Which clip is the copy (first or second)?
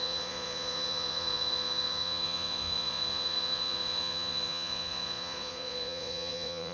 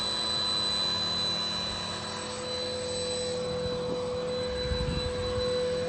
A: first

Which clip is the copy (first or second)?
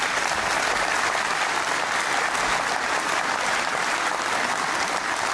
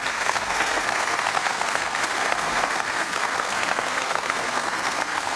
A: second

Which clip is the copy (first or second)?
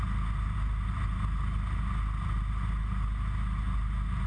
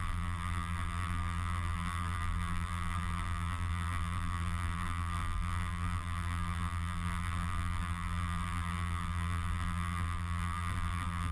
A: second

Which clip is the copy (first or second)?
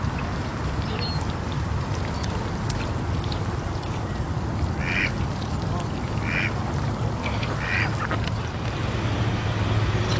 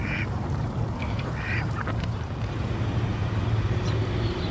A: second